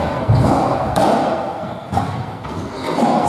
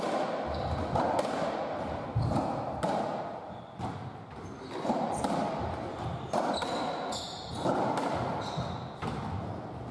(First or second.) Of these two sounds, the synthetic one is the first